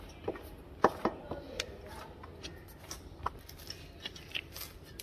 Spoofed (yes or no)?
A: no